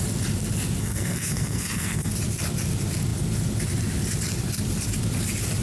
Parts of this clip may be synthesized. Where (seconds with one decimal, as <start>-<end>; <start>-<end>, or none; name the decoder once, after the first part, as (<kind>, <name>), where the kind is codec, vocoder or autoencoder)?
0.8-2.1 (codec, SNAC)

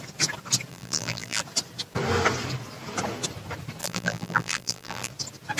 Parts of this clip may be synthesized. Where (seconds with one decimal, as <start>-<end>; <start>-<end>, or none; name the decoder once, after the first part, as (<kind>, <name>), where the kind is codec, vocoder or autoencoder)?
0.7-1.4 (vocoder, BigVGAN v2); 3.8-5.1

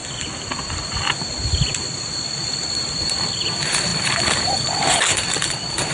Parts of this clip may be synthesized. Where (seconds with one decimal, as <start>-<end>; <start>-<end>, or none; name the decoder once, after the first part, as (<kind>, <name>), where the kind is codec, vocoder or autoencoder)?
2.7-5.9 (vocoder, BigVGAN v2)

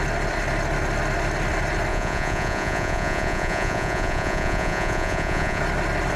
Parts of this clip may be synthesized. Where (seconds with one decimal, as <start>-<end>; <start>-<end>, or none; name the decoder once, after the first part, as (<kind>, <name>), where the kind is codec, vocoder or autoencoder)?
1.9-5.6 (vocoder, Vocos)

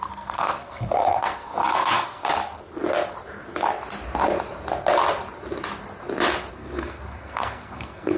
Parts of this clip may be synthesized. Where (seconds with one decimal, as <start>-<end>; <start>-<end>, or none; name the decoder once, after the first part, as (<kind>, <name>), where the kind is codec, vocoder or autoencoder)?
0.0-2.4 (codec, SNAC); 6.5-8.2

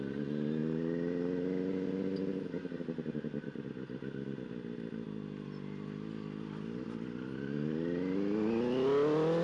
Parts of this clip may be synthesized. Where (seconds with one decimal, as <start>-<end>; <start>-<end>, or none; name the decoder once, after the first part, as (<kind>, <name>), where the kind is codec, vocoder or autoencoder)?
none